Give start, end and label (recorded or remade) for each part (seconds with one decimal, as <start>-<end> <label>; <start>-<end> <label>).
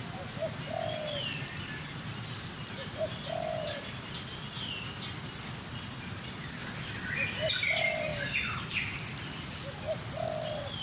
0.0-10.8 recorded